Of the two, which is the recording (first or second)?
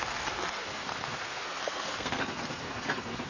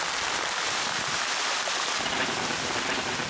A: second